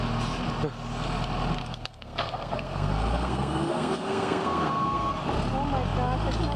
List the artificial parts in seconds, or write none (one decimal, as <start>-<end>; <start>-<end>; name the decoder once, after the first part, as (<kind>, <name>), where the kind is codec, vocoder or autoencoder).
1.6-5.1 (codec, SNAC)